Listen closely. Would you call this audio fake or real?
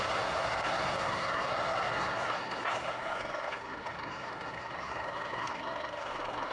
fake